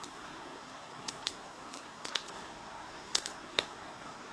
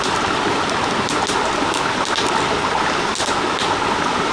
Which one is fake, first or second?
first